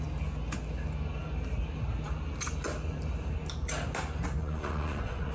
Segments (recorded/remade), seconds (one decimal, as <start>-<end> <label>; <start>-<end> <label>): 0.0-4.4 recorded; 4.4-5.3 remade